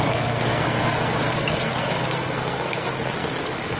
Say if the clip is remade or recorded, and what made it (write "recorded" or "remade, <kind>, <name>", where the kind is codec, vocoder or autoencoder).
remade, codec, SNAC